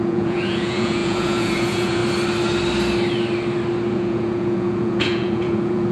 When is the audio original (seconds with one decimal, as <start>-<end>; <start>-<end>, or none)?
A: 2.0-3.9